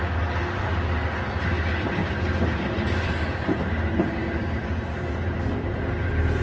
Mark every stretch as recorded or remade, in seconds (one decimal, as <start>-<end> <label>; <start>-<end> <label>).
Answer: 0.0-2.0 recorded; 2.0-5.8 remade; 5.8-6.4 recorded

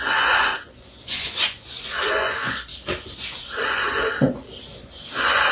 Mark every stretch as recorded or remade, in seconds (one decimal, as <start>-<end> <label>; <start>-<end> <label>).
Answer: 0.0-5.5 remade

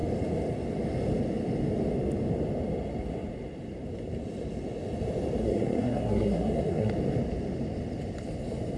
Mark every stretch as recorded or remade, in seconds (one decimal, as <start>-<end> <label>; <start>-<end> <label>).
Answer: 0.0-5.4 recorded; 5.4-6.9 remade; 6.9-8.8 recorded

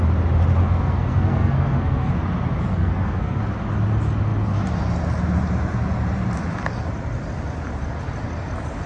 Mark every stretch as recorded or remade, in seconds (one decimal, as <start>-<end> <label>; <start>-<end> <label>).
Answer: 0.0-0.6 recorded; 0.6-2.1 remade; 2.1-2.7 recorded; 2.7-3.4 remade; 3.4-8.9 recorded